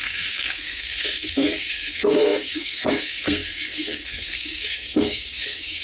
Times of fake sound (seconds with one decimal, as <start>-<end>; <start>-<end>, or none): 0.0-5.8